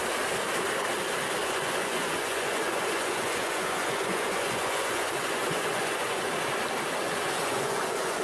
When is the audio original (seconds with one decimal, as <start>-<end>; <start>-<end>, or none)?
0.0-1.4; 6.3-7.0